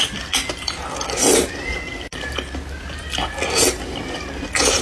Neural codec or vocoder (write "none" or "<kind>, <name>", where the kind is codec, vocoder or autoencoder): none